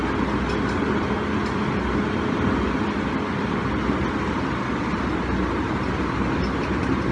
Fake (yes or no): no